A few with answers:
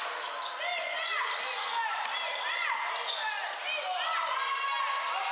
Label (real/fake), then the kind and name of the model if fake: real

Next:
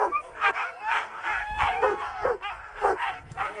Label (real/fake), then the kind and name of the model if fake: fake, codec, SNAC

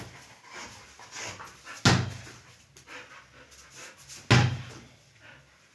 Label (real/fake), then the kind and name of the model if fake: real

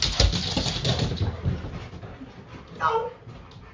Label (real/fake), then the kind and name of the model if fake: real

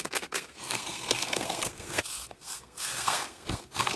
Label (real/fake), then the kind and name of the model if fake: fake, codec, SNAC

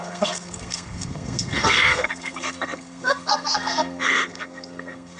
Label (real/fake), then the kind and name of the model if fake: fake, codec, SNAC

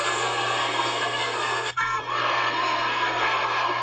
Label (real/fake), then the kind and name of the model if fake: fake, codec, SNAC